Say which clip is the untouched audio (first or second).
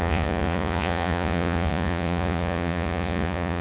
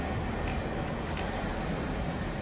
second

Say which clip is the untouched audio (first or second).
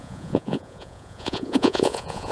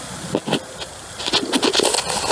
second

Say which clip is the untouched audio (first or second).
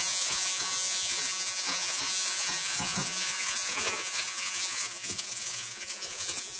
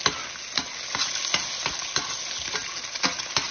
second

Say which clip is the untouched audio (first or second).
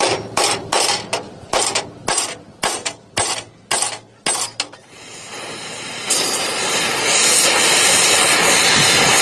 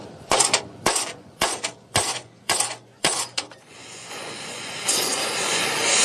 first